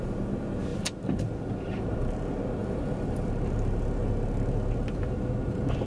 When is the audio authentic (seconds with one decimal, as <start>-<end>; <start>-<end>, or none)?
0.0-2.6; 3.3-5.9